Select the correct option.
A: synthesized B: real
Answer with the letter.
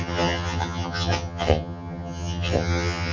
A